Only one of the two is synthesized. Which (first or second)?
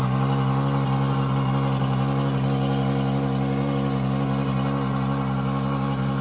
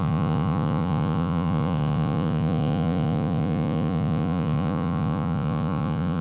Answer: second